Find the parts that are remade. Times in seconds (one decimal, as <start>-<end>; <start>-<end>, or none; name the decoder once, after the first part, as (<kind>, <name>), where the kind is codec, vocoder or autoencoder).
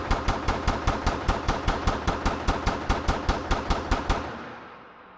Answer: 0.0-2.1 (vocoder, BigVGAN v2); 3.4-4.0